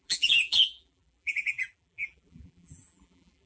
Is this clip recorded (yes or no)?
no